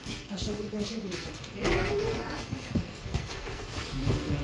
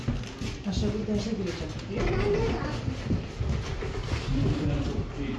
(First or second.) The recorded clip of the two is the second